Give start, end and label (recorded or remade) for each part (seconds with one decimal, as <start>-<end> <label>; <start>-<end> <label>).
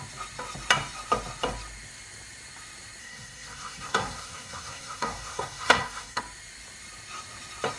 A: 0.0-3.0 recorded; 3.0-6.2 remade; 6.2-7.8 recorded